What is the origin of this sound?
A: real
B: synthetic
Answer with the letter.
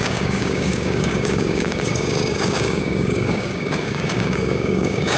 B